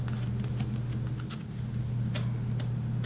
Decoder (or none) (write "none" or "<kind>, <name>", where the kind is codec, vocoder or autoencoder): none